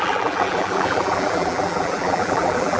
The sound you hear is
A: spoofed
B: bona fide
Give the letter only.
A